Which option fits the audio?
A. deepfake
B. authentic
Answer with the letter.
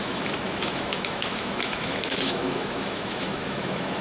A